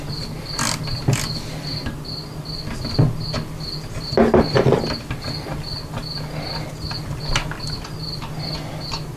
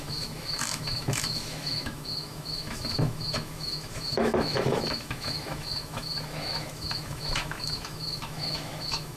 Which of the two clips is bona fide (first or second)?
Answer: first